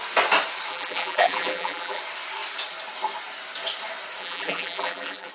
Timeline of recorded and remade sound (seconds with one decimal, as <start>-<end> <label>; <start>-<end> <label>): 0.0-0.7 recorded; 0.7-2.0 remade; 2.0-4.2 recorded; 4.2-5.3 remade